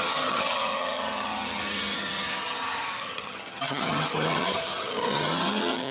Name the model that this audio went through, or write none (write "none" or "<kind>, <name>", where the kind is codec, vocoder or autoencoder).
vocoder, HiFi-GAN